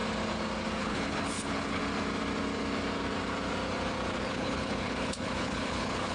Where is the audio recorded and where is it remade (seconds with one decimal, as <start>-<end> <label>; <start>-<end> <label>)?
0.0-0.8 recorded; 0.8-1.8 remade; 1.8-4.2 recorded; 4.2-6.1 remade